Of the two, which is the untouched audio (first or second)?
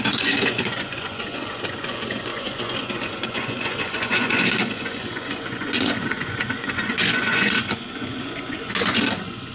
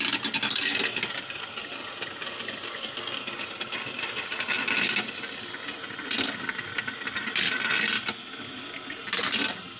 second